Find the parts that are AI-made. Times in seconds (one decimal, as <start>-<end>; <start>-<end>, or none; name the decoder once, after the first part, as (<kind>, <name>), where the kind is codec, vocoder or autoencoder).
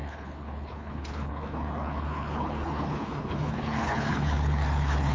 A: 0.0-5.1 (codec, HILCodec)